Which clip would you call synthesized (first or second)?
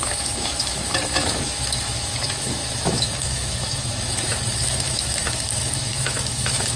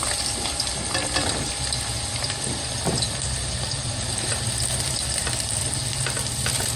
first